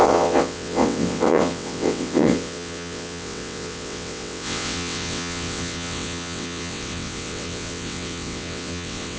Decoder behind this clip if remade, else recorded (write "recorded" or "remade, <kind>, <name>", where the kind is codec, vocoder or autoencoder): remade, vocoder, WaveNeXt